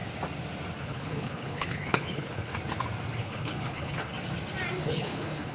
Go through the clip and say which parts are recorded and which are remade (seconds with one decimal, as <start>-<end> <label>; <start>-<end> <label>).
0.0-0.8 recorded; 0.8-2.5 remade; 2.5-3.2 recorded; 3.2-4.1 remade; 4.1-4.8 recorded; 4.8-5.5 remade